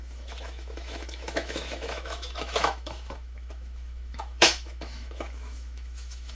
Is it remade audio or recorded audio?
remade